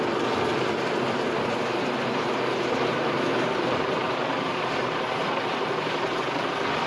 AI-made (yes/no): no